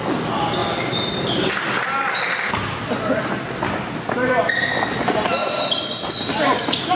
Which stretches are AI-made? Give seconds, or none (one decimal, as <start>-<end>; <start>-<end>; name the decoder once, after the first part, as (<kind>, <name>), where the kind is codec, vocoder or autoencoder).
5.4-7.0 (vocoder, BigVGAN v2)